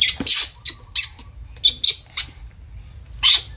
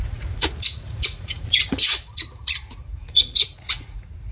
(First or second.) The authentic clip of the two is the first